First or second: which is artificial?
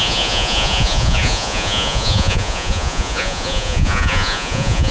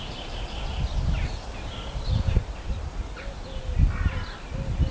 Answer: first